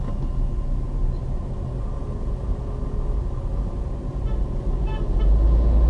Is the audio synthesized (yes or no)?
no